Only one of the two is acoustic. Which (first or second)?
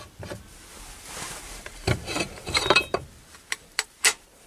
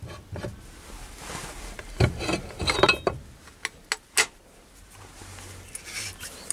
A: second